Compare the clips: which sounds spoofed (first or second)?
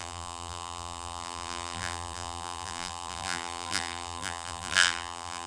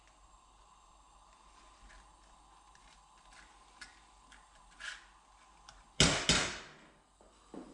first